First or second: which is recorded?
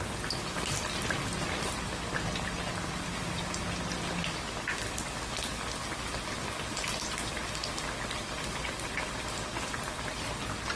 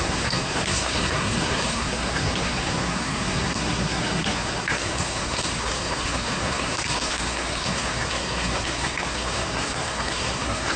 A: first